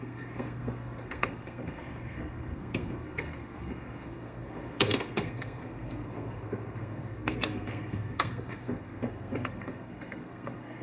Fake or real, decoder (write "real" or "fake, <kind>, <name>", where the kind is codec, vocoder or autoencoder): fake, codec, SNAC